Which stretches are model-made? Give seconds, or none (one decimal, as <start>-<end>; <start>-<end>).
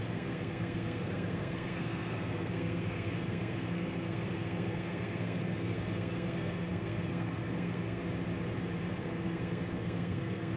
0.0-8.0; 8.8-10.6